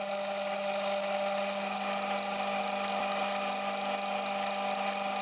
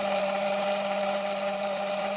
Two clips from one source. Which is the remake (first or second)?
second